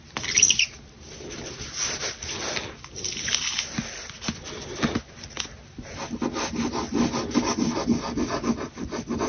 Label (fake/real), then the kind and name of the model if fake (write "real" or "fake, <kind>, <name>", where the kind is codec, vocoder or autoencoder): real